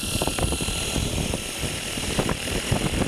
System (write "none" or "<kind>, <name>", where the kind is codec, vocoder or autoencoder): none